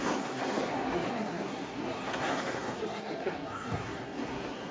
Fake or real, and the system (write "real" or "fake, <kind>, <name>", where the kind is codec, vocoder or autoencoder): fake, codec, SNAC